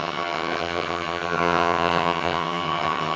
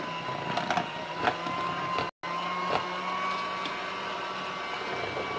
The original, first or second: second